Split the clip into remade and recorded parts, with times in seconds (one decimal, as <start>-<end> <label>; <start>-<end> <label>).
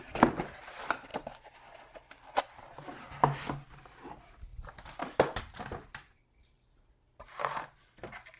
0.0-8.4 recorded